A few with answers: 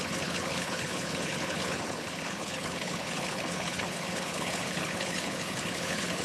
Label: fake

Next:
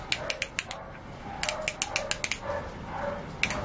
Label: real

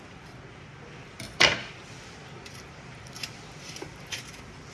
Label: fake